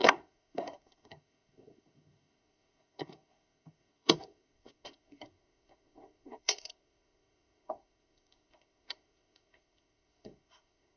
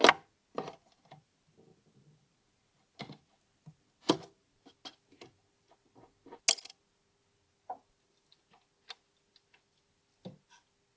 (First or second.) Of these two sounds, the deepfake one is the first